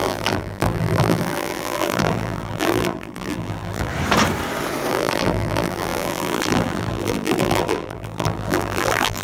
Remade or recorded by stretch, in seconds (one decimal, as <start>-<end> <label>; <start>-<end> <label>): 0.0-3.9 remade; 3.9-4.9 recorded; 4.9-9.2 remade